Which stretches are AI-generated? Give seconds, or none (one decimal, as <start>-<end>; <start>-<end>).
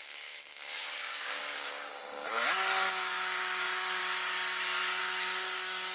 0.0-4.0; 5.0-5.9